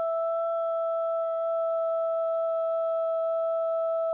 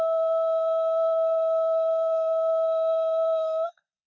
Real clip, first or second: first